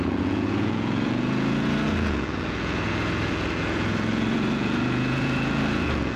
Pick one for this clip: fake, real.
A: fake